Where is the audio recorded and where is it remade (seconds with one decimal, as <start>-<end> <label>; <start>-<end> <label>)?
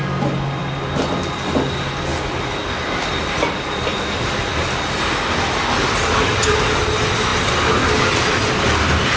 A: 0.0-9.2 recorded